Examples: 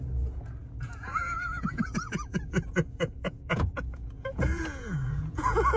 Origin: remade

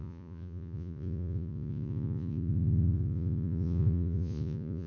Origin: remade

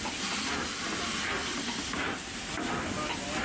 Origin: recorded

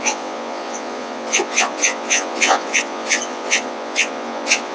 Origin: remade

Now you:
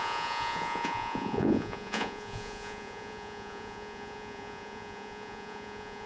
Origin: remade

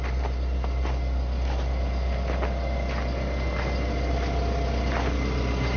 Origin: recorded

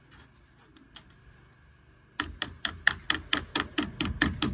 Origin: recorded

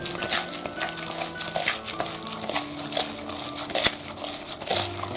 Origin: recorded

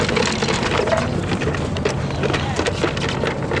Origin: recorded